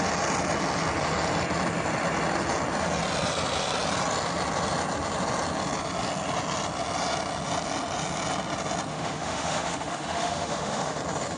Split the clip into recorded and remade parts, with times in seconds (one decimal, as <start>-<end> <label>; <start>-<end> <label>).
0.0-8.9 recorded; 8.9-11.0 remade; 11.0-11.4 recorded